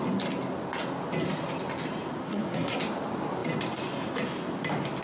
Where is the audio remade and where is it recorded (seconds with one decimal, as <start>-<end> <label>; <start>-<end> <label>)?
0.0-2.2 recorded; 2.2-2.8 remade; 2.8-5.0 recorded